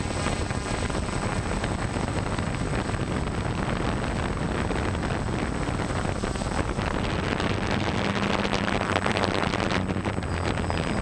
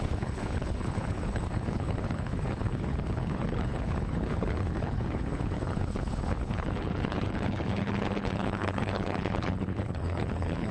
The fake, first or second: second